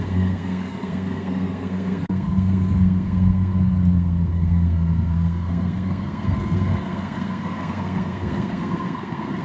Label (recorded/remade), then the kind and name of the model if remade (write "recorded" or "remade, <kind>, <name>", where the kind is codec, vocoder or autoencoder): remade, codec, SNAC